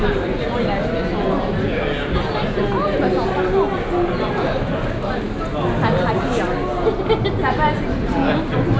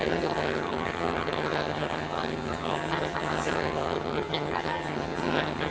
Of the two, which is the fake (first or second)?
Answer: second